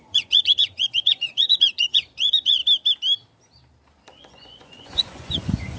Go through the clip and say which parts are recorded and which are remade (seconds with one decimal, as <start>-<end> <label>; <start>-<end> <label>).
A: 0.0-2.6 remade; 2.6-4.2 recorded; 4.2-5.8 remade